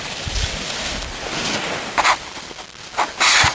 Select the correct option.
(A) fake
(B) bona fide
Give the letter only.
B